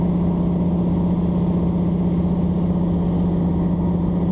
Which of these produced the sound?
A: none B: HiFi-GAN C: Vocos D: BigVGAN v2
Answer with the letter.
A